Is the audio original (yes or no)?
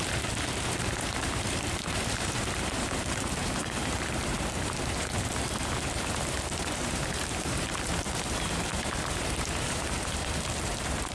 no